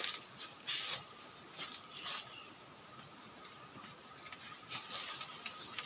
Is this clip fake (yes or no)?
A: no